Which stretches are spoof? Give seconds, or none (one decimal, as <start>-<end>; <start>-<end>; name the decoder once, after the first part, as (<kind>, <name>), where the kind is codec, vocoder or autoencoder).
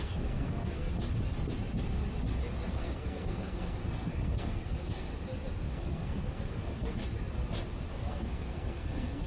0.0-0.9 (codec, SNAC); 2.7-5.1; 5.7-7.0; 7.9-9.3